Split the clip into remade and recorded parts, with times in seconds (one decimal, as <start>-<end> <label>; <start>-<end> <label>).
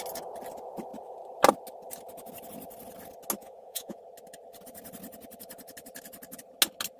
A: 0.0-3.4 recorded; 3.4-4.0 remade; 4.0-7.0 recorded